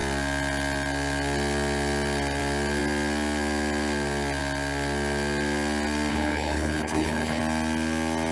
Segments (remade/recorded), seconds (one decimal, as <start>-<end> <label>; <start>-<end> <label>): 0.0-6.1 recorded; 6.1-7.4 remade; 7.4-8.3 recorded